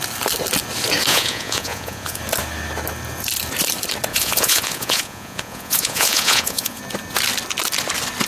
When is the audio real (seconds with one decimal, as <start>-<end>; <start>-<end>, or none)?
0.0-1.1; 2.2-4.1; 6.8-8.3